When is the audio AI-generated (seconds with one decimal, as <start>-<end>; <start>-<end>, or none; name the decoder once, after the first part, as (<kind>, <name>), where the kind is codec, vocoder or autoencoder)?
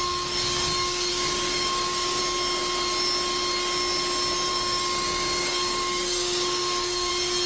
1.1-2.2 (codec, DAC); 4.5-7.1